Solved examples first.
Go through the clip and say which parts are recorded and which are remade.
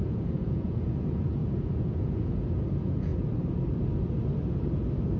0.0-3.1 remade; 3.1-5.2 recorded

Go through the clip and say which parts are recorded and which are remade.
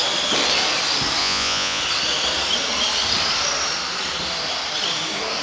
0.0-1.2 recorded; 1.2-1.8 remade; 1.8-5.4 recorded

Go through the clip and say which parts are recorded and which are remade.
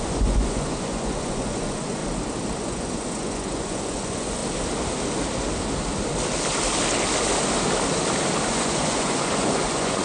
0.0-2.0 remade; 2.0-2.6 recorded; 2.6-4.4 remade; 4.4-8.5 recorded; 8.5-10.0 remade